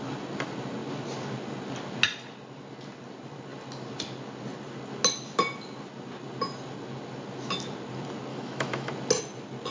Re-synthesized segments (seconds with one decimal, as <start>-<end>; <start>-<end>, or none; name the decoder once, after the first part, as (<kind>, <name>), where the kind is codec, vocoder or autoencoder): 8.3-8.9 (autoencoder, DAC-VAE)